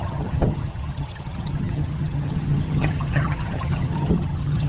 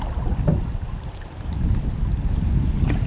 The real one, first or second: second